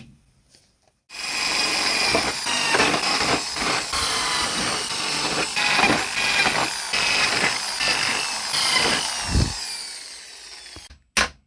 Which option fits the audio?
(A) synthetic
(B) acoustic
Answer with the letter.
B